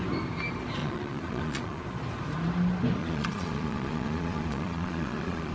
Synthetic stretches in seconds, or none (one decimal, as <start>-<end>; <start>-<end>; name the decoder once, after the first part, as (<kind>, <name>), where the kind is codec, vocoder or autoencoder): 0.8-1.8 (vocoder, Vocos); 3.0-5.5